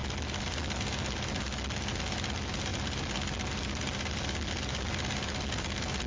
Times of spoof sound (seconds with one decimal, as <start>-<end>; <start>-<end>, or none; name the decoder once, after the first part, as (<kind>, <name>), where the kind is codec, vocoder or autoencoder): none